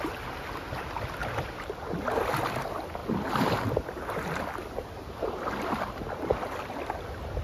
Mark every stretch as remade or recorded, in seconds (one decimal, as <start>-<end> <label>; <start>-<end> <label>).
0.0-1.2 recorded; 1.2-2.3 remade; 2.3-7.4 recorded